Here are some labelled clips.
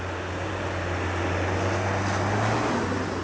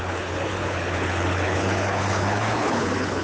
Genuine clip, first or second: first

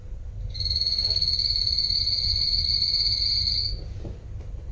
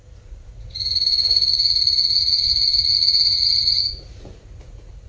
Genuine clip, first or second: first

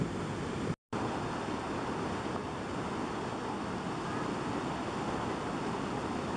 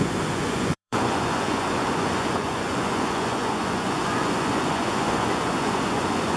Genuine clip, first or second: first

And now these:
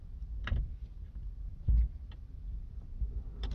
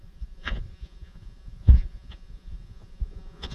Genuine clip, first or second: first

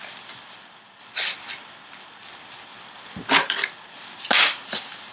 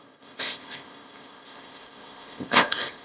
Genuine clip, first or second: first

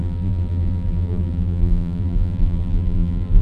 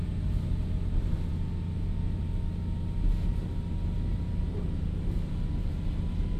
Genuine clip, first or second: second